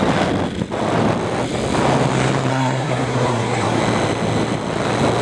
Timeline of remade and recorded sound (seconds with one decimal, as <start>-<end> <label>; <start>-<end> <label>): 0.0-2.5 recorded; 2.5-3.8 remade; 3.8-5.2 recorded